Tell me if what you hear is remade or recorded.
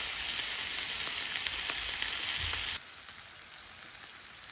recorded